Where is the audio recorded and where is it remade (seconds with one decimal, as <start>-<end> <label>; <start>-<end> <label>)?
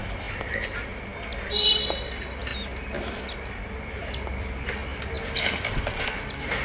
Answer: 0.0-6.6 recorded